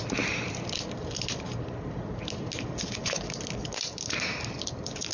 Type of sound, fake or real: real